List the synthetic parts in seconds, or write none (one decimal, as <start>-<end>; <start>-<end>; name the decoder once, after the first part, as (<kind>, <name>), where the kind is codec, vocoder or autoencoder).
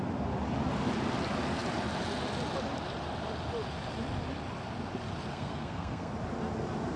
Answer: 5.3-6.1 (codec, SNAC)